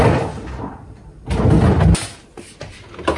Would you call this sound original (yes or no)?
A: yes